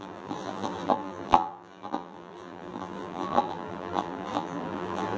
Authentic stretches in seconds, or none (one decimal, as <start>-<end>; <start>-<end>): none